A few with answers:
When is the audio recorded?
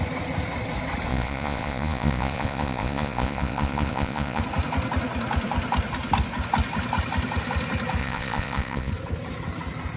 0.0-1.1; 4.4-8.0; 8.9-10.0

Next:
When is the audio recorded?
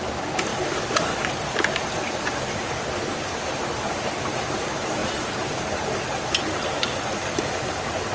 0.0-8.1